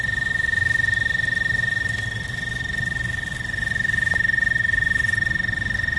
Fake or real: real